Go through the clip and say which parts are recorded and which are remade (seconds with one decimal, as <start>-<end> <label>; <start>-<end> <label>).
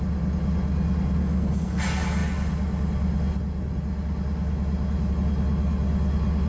0.0-1.2 recorded; 1.2-1.8 remade; 1.8-6.5 recorded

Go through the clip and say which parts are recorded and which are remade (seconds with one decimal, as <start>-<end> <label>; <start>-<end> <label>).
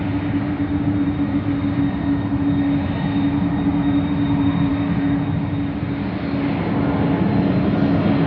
0.0-8.3 recorded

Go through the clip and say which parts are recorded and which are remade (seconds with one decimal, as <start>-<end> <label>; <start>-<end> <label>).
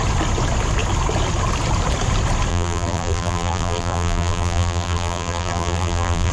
0.0-2.5 recorded; 2.5-6.3 remade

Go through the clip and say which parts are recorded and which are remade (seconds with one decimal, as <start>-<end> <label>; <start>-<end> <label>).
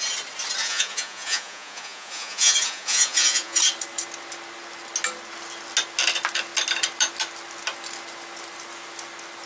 0.0-0.6 recorded; 0.6-3.6 remade; 3.6-9.5 recorded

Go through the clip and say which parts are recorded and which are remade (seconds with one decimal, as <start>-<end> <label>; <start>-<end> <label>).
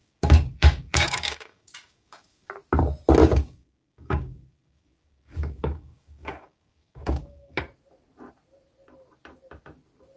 0.0-2.5 remade; 2.5-3.2 recorded; 3.2-7.6 remade; 7.6-10.2 recorded